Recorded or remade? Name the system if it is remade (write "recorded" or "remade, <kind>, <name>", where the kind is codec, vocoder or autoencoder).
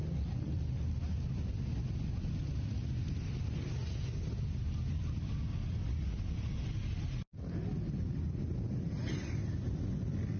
recorded